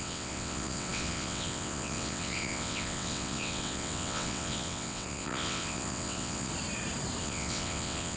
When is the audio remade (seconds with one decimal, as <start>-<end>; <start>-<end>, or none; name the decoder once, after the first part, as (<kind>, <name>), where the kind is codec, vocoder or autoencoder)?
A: 0.0-6.5 (vocoder, WaveNeXt); 7.2-8.2